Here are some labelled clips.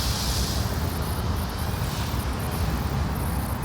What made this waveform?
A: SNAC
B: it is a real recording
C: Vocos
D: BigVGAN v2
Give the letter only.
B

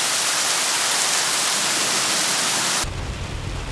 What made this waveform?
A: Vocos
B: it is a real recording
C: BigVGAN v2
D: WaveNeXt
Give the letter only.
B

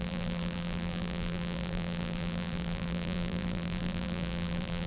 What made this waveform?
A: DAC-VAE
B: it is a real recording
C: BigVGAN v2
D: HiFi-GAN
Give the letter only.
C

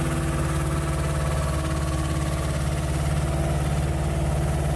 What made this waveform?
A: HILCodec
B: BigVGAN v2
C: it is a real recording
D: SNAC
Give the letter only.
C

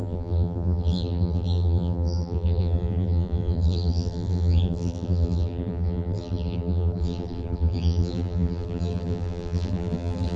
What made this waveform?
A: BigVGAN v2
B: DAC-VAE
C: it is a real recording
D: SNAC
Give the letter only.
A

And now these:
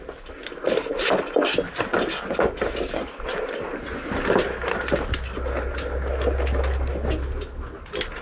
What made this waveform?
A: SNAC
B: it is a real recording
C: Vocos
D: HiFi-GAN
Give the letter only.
B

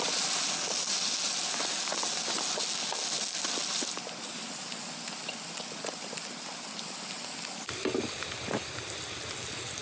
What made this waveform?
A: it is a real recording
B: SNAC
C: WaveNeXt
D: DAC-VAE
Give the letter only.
A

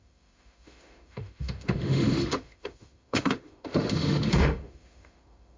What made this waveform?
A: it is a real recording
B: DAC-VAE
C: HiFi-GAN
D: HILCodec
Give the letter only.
B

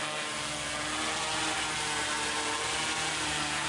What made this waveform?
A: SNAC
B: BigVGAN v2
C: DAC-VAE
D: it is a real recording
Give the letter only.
D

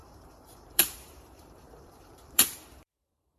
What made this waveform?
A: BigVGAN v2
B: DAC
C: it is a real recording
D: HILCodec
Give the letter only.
A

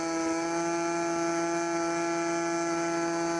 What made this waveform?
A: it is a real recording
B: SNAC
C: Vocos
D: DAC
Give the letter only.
A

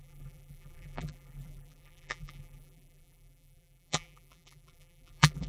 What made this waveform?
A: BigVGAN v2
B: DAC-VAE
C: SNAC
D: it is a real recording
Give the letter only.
A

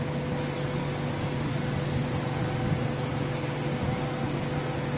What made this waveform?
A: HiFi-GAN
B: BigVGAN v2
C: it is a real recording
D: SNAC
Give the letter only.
C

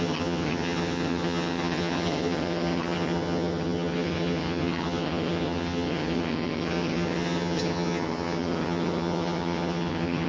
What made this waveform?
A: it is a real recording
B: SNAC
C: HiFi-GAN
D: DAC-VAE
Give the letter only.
C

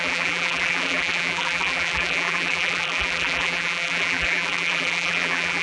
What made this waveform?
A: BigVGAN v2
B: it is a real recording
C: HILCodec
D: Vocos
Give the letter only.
A